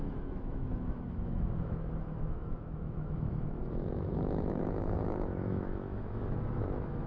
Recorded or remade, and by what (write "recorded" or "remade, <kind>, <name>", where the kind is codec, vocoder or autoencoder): remade, autoencoder, DAC-VAE